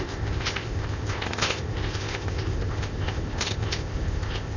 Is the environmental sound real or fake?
fake